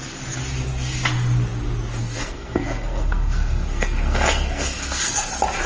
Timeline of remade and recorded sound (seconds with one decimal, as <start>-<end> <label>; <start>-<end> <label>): 0.0-2.0 recorded; 2.0-5.3 remade; 5.3-5.7 recorded